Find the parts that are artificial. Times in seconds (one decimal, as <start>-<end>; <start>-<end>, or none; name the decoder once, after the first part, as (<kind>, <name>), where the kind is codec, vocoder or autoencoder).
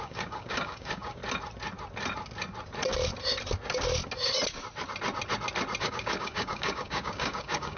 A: 0.0-1.2 (codec, DAC); 5.8-7.8